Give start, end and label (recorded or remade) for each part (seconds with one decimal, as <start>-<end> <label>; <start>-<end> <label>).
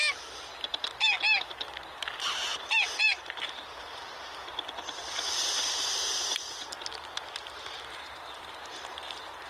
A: 0.0-2.4 recorded; 2.4-5.9 remade; 5.9-7.4 recorded; 7.4-9.5 remade